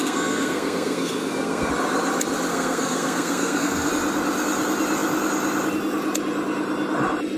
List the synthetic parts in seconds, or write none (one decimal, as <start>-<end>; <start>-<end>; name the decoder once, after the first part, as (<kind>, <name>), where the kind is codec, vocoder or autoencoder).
0.0-1.7 (codec, SNAC); 2.5-3.9